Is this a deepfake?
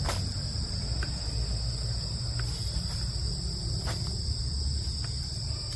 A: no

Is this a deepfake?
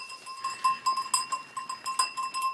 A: no